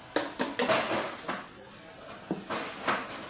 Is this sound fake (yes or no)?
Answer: no